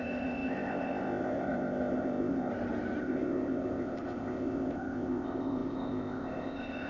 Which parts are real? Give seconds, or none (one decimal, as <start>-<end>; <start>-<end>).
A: 2.5-3.0